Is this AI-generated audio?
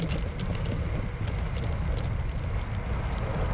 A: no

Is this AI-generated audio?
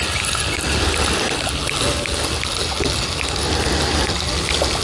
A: no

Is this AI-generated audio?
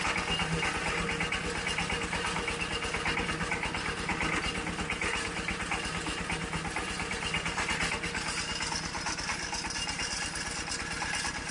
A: no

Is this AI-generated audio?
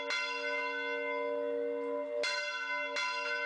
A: no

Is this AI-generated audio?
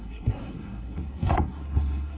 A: yes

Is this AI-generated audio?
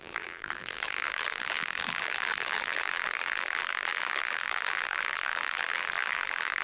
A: yes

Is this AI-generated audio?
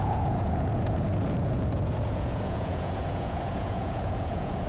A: yes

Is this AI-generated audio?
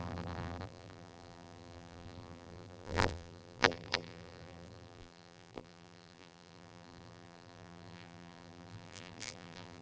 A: yes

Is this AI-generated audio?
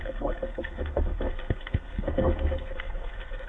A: yes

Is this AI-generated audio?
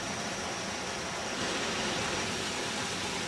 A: no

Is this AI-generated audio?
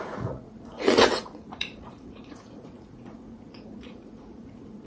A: yes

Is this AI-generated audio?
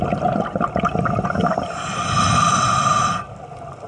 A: no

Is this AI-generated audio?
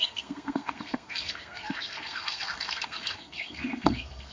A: yes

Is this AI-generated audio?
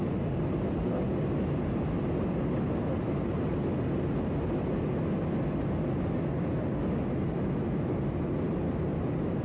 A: no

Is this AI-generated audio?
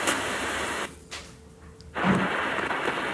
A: no